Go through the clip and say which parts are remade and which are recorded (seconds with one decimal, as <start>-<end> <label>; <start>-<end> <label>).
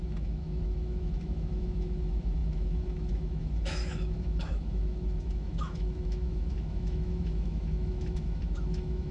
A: 0.0-9.1 remade